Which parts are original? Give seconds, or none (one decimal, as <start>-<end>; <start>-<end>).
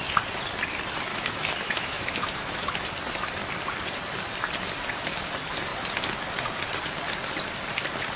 0.0-1.1; 2.8-8.2